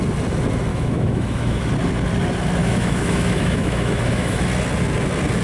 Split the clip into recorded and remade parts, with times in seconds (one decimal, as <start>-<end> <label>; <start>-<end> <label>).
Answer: 0.0-0.7 recorded; 0.7-1.7 remade; 1.7-2.6 recorded; 2.6-4.4 remade; 4.4-5.4 recorded